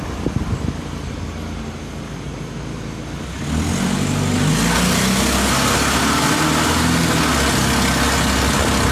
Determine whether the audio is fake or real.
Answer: real